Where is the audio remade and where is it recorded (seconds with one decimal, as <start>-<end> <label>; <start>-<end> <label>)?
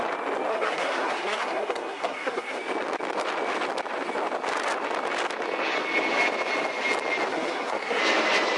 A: 0.0-0.5 recorded; 0.5-2.6 remade; 2.6-7.3 recorded; 7.3-8.0 remade; 8.0-8.6 recorded